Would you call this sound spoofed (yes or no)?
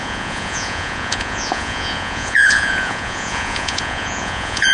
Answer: yes